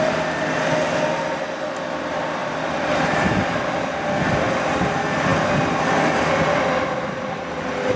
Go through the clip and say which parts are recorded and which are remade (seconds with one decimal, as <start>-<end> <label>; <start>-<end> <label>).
0.0-2.4 recorded; 2.4-4.0 remade; 4.0-8.0 recorded